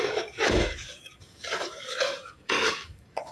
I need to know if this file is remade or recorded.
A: remade